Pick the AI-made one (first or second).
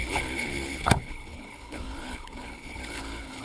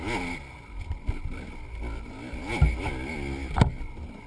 first